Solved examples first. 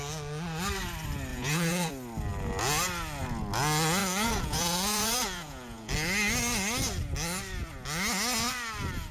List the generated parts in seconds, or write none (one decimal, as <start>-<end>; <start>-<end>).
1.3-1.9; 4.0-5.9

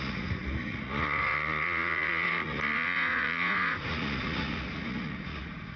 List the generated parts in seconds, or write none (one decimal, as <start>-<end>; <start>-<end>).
0.0-5.8

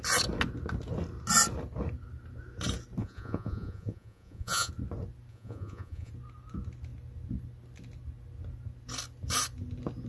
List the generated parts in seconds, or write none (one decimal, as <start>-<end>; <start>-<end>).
3.0-4.7; 5.3-6.1

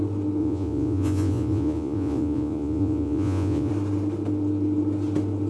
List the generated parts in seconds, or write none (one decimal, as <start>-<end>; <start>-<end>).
0.4-3.7

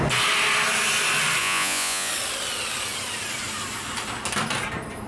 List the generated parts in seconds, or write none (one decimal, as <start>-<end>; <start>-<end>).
1.4-2.1